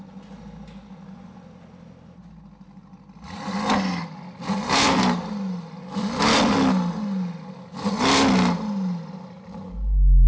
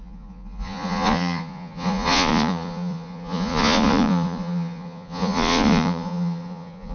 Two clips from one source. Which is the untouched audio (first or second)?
first